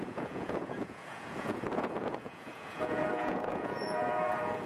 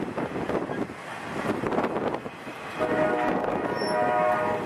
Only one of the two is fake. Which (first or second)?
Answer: first